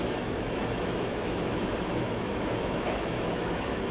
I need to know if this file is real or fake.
fake